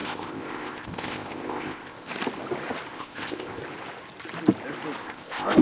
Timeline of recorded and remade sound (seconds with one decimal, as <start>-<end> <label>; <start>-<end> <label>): 0.0-2.1 remade; 2.1-2.9 recorded; 2.9-3.6 remade; 3.6-5.0 recorded; 5.0-5.6 remade